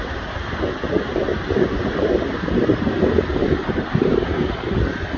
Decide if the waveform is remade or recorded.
recorded